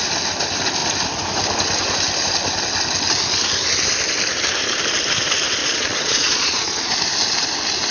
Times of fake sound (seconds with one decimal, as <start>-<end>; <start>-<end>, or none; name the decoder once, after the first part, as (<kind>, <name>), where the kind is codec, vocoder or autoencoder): 5.6-6.9 (vocoder, Vocos)